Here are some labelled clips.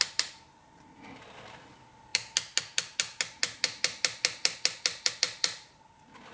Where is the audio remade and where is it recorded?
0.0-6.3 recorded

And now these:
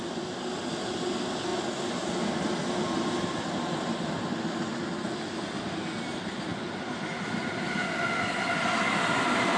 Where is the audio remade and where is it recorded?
0.0-9.6 recorded